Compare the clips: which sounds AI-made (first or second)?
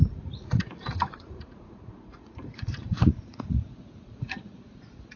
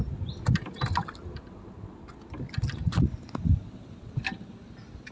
first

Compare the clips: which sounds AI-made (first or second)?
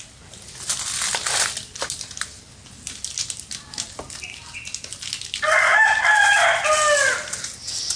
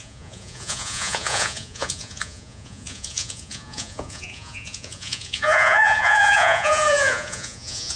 second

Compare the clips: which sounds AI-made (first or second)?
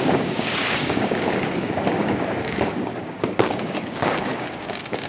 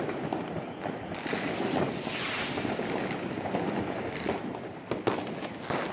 first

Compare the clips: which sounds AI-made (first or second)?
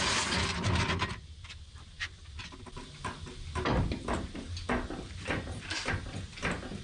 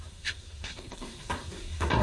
second